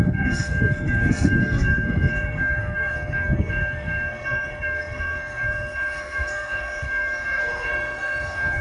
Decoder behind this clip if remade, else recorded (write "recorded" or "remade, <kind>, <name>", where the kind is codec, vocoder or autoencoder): remade, codec, SNAC